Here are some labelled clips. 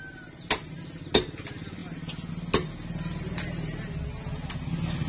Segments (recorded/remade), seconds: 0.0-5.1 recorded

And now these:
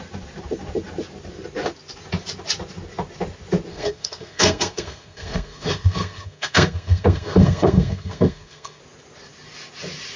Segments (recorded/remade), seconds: 0.0-3.7 recorded; 3.7-8.8 remade; 8.8-10.2 recorded